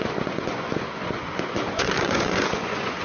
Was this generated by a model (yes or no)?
yes